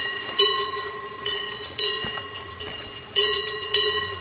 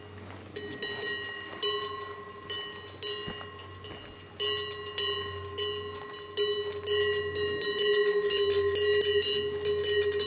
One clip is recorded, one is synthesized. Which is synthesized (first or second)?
first